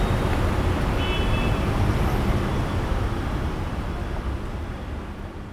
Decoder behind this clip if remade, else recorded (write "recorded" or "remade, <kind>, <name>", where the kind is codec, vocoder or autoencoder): recorded